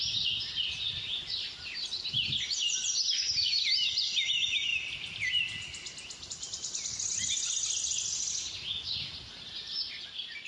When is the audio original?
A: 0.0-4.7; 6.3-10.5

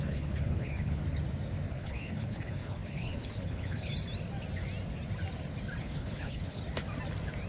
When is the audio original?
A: 1.0-1.7; 3.9-5.8; 6.6-7.5

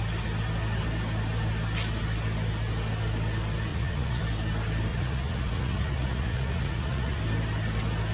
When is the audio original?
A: 0.0-3.7; 4.2-4.9; 7.2-8.1

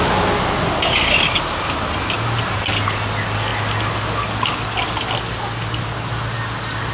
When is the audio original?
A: 0.0-6.9